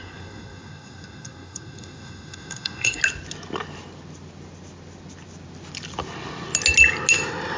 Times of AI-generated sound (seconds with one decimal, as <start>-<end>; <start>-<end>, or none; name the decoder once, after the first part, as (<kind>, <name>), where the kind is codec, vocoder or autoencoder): 0.0-3.0 (codec, SNAC)